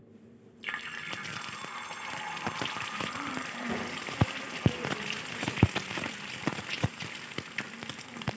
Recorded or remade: remade